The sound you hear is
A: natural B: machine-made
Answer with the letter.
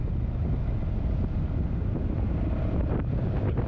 A